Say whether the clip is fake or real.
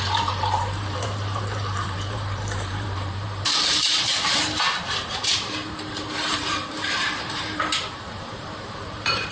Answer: fake